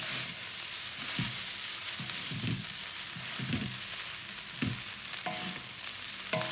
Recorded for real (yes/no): yes